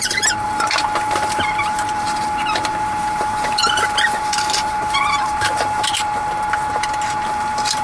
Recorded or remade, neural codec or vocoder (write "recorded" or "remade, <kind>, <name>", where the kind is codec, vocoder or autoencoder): remade, vocoder, BigVGAN v2